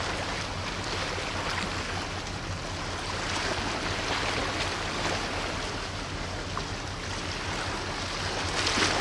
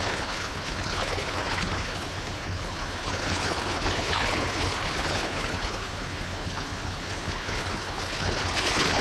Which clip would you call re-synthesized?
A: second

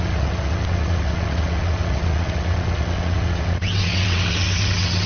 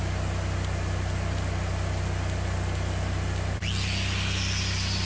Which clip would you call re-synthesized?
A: first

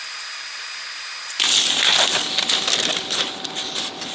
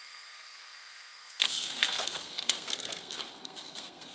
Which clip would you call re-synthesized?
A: second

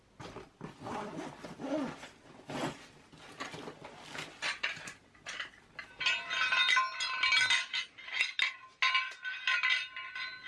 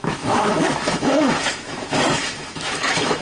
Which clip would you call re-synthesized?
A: second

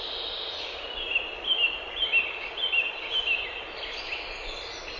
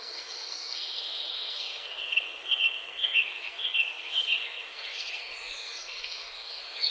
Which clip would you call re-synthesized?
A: second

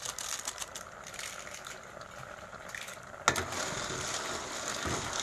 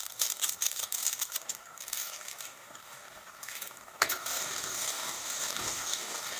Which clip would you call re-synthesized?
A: second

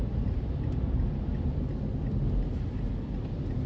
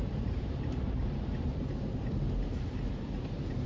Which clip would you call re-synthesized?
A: second